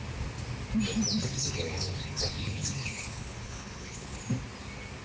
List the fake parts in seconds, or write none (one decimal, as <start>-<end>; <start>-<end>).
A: 1.2-4.2